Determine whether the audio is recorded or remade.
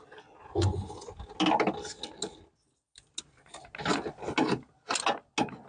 recorded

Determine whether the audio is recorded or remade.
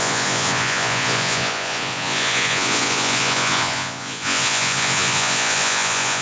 remade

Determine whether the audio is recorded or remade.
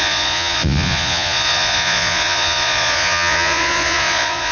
remade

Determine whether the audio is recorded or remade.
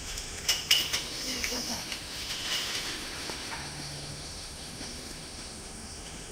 remade